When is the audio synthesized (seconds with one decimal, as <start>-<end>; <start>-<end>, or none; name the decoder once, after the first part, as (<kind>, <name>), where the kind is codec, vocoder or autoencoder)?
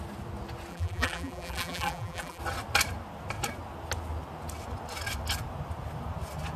0.7-2.4 (vocoder, BigVGAN v2)